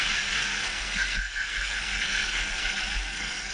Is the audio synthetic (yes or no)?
yes